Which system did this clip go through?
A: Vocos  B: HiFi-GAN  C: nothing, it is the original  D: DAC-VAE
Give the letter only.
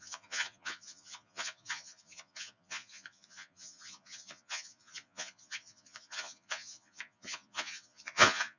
A